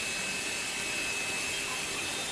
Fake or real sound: real